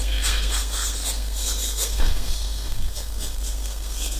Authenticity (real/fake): fake